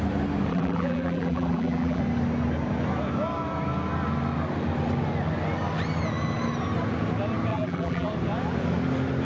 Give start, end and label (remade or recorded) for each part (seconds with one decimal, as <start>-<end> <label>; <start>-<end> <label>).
0.0-0.5 recorded; 0.5-2.0 remade; 2.0-7.5 recorded; 7.5-8.1 remade; 8.1-9.2 recorded